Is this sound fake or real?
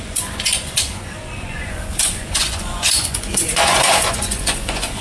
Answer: fake